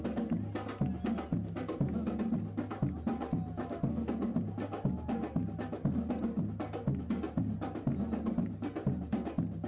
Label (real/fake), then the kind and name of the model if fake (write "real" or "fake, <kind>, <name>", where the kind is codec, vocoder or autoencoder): real